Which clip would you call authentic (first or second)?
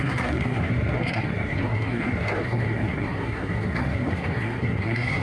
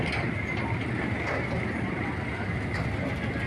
second